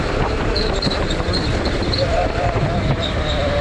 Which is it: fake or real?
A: fake